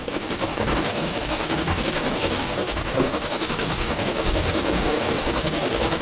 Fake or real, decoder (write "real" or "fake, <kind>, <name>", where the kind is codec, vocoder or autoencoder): fake, codec, DAC